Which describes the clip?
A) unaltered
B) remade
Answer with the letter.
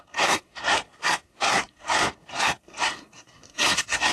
B